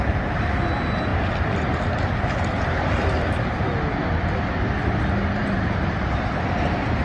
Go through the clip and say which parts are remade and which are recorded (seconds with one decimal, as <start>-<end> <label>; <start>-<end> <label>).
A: 0.0-7.0 recorded